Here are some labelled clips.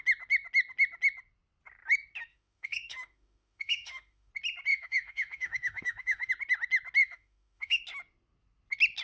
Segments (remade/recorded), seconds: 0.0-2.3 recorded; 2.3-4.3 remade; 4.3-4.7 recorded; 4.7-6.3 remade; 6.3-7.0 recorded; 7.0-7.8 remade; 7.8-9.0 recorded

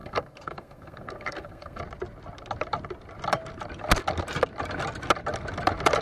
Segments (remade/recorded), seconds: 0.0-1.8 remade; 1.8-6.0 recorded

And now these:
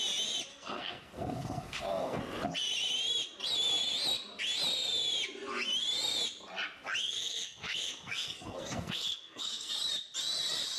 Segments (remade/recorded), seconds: 0.0-0.5 recorded; 0.5-2.2 remade; 2.2-7.0 recorded; 7.0-9.7 remade; 9.7-10.8 recorded